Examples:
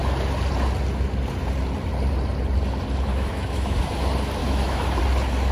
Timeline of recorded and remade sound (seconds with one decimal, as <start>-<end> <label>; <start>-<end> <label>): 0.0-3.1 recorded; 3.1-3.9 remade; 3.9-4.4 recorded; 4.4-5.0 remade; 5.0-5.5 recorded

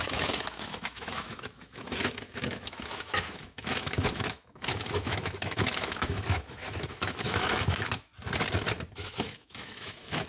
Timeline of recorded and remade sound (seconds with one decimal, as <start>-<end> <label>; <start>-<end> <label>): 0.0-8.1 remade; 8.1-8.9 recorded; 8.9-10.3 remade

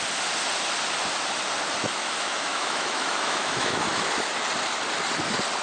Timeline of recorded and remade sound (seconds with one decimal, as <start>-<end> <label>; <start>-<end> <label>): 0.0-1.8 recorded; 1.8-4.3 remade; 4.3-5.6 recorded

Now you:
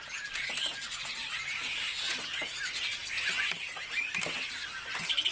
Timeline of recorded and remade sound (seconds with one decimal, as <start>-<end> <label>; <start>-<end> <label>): 0.0-5.3 recorded